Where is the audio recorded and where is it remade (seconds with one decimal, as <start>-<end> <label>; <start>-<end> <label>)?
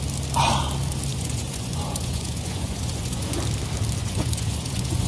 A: 0.0-1.1 recorded; 1.1-3.4 remade; 3.4-4.0 recorded; 4.0-5.1 remade